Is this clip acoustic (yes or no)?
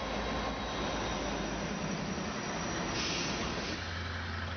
yes